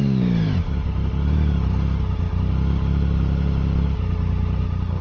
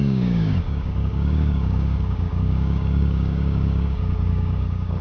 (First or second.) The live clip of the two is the first